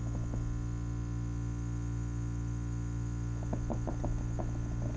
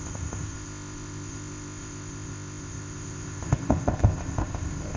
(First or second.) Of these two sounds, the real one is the first